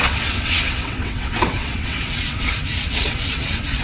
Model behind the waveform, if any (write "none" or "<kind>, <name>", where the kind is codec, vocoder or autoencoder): vocoder, WaveNeXt